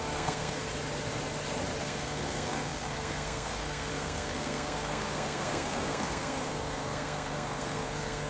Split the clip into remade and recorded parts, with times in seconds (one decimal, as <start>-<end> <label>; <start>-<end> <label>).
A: 0.0-0.7 remade; 0.7-1.8 recorded; 1.8-8.3 remade